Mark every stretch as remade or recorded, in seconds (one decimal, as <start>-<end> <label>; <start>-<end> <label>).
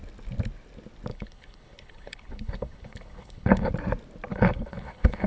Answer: 0.0-1.1 recorded; 1.1-3.7 remade; 3.7-4.3 recorded; 4.3-5.3 remade